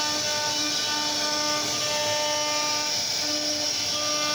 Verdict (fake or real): real